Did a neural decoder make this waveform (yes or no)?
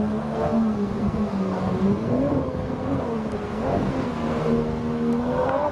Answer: yes